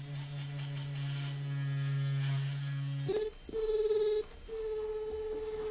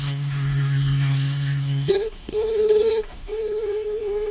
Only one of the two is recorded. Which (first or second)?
first